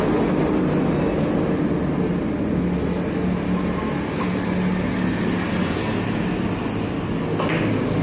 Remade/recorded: recorded